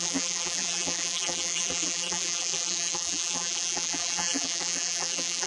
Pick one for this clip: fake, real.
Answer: fake